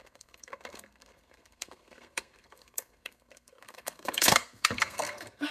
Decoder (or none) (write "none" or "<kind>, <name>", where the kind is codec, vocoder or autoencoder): codec, SNAC